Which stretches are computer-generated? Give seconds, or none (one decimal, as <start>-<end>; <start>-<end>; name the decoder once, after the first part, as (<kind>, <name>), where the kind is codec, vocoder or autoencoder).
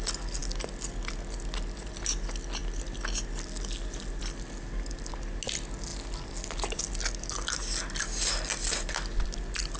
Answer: none